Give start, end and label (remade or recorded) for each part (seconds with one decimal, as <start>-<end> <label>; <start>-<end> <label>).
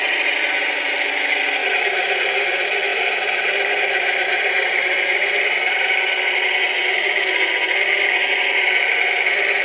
0.0-1.6 recorded; 1.6-2.2 remade; 2.2-2.9 recorded; 2.9-6.2 remade; 6.2-9.6 recorded